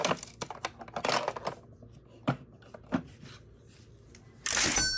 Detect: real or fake real